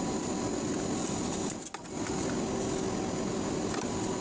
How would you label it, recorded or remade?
recorded